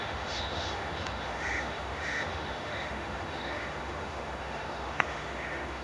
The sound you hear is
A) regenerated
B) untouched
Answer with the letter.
A